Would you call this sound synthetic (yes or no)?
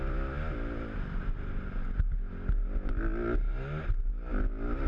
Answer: no